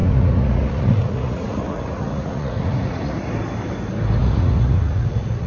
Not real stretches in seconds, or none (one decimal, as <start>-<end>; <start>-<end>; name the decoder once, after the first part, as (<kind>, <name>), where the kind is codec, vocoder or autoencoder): 0.0-3.3 (vocoder, Vocos); 4.2-5.5